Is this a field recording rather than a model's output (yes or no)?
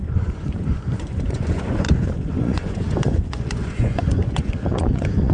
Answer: no